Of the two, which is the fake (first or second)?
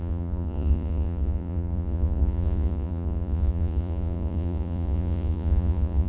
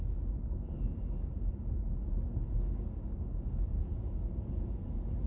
first